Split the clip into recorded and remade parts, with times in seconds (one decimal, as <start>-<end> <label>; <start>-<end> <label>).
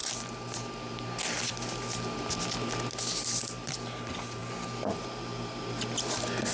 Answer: 0.0-6.5 recorded